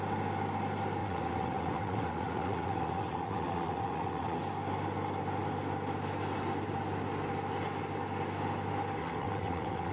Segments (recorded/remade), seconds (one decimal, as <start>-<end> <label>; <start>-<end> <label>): 0.0-1.0 recorded; 1.0-4.4 remade; 4.4-9.0 recorded; 9.0-9.9 remade